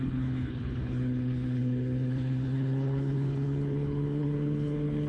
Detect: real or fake fake